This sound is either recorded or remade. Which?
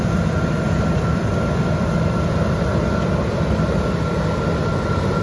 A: recorded